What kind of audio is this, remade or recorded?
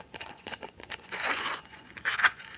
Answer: remade